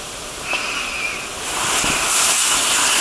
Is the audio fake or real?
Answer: real